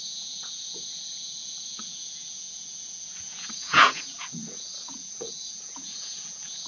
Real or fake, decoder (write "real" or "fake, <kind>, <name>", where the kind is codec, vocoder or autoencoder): fake, vocoder, Vocos